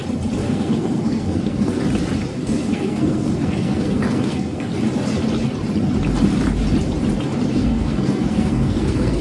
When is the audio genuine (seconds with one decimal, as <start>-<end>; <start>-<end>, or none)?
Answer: 0.0-0.4; 1.8-2.3; 4.7-7.5